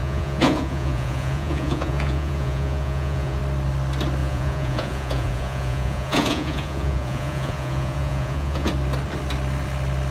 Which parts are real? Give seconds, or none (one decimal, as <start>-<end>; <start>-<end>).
3.4-4.2; 8.7-10.1